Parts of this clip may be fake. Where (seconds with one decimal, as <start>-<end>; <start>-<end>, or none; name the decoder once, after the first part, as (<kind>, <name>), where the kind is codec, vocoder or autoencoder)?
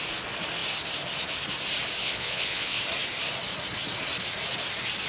2.0-2.8 (vocoder, Vocos)